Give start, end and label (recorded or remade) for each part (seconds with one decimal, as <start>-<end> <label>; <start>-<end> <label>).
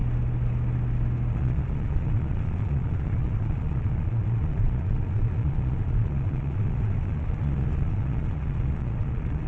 0.0-1.3 recorded; 1.3-9.5 remade